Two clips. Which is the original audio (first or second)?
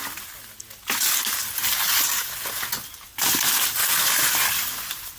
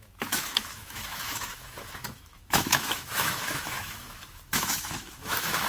first